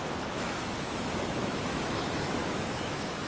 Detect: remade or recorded remade